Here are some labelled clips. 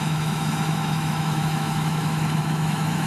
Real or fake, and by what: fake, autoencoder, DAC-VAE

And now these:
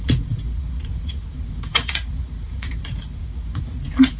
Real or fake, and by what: fake, vocoder, Vocos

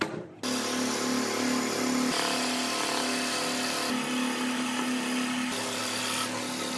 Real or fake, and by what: real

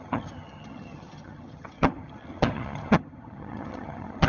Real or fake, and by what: fake, vocoder, HiFi-GAN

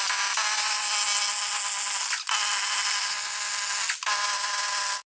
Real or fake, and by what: real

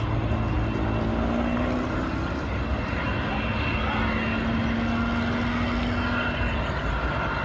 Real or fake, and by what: real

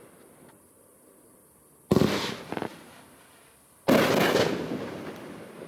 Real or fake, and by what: real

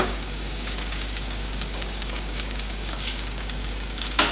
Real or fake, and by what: fake, codec, DAC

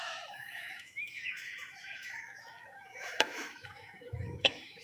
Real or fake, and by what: fake, autoencoder, DAC-VAE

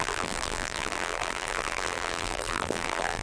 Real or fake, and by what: fake, vocoder, BigVGAN v2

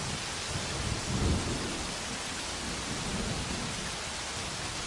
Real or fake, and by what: real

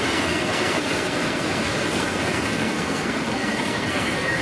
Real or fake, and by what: fake, codec, SNAC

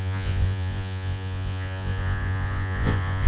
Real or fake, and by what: fake, vocoder, Vocos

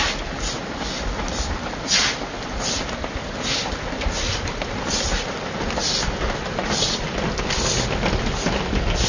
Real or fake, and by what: real